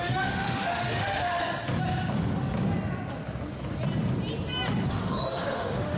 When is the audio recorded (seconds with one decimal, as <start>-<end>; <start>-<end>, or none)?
1.4-4.9